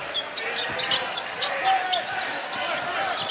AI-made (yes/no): no